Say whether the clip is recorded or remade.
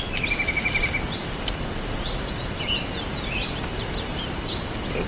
recorded